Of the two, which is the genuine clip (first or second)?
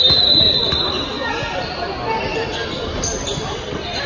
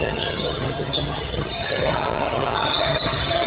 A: first